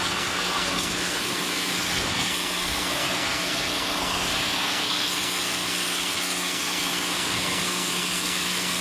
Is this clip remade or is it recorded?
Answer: remade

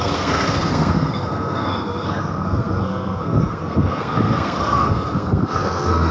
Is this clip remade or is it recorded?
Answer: remade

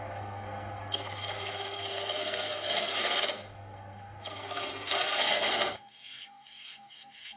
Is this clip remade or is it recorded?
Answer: remade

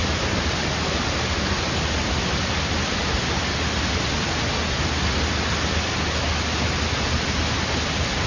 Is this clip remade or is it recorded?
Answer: recorded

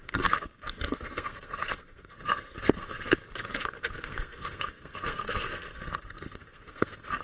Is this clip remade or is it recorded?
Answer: remade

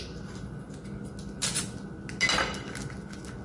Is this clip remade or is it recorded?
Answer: recorded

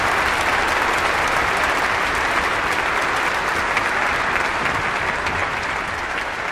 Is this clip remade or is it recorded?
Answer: recorded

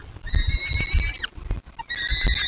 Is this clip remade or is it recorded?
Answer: recorded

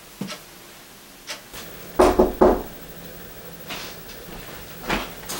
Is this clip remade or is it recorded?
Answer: recorded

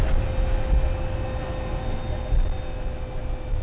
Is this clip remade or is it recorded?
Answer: recorded